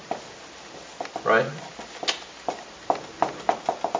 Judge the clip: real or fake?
real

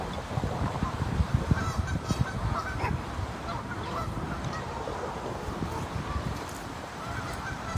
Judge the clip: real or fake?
fake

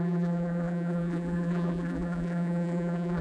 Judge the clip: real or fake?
fake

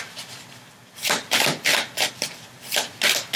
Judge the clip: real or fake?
fake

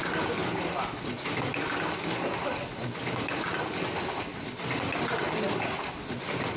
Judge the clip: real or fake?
real